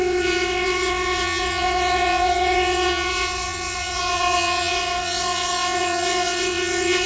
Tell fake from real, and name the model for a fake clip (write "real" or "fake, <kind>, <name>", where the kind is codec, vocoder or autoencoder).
fake, vocoder, WaveNeXt